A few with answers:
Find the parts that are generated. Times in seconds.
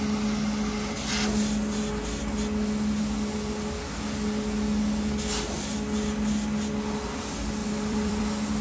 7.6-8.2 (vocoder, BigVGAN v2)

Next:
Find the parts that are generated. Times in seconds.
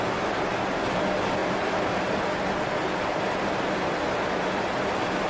none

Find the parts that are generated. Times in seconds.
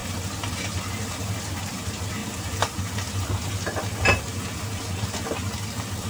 none